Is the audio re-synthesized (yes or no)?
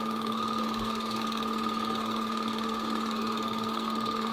yes